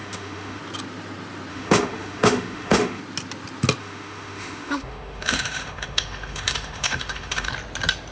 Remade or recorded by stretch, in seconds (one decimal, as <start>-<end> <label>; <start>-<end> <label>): 0.0-0.6 remade; 0.6-1.5 recorded; 1.5-3.0 remade; 3.0-3.8 recorded; 3.8-7.5 remade; 7.5-8.1 recorded